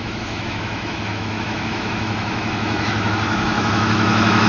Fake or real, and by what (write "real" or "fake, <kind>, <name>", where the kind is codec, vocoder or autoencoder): fake, autoencoder, DAC-VAE